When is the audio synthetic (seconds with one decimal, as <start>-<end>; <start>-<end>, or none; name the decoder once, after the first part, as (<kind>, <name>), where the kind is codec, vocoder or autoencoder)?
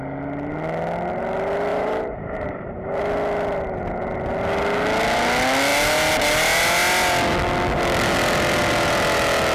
1.7-3.0 (vocoder, BigVGAN v2)